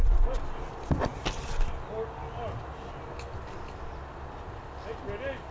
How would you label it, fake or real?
real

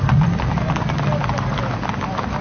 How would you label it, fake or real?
fake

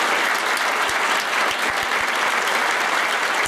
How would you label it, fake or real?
real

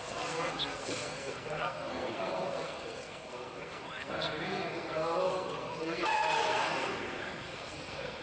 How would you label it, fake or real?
fake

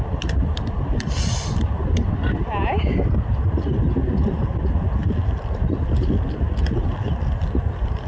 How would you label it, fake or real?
real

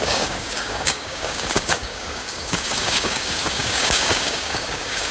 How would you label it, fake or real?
fake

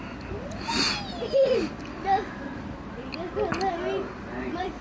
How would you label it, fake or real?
real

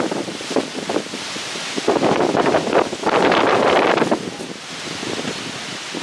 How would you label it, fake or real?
fake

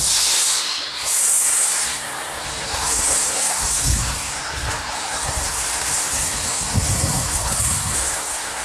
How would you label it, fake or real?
fake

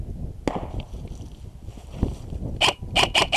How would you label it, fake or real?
real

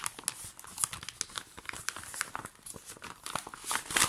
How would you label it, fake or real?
real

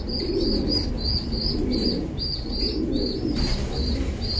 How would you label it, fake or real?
real